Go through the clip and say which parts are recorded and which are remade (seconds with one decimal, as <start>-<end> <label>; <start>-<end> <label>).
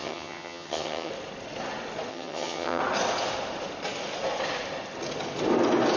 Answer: 0.0-1.1 remade; 1.1-2.1 recorded; 2.1-2.8 remade; 2.8-6.0 recorded